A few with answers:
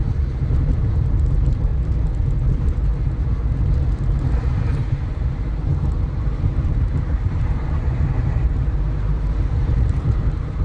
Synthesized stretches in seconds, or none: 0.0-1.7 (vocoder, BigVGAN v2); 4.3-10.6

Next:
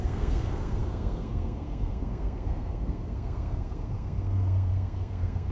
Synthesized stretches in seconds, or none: 0.0-5.5 (codec, SNAC)